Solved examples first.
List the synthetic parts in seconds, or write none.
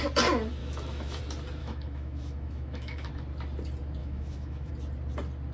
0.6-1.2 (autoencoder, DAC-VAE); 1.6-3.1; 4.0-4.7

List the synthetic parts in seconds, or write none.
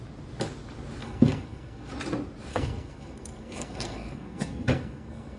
1.0-1.9 (codec, SNAC); 2.5-5.4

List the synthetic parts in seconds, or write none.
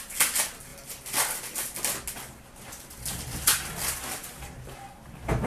0.7-1.6 (vocoder, BigVGAN v2); 3.5-5.5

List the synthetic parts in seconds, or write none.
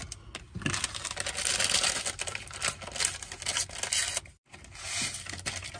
none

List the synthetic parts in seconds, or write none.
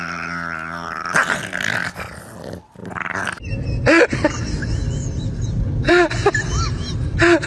none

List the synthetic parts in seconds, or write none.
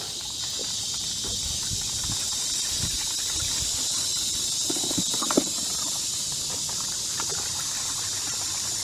none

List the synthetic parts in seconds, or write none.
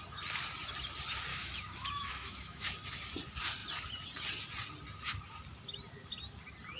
1.3-2.7 (autoencoder, DAC-VAE)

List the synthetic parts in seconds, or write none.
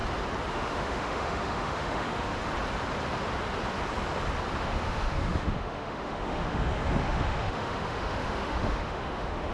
0.5-2.4 (autoencoder, DAC-VAE); 4.6-9.5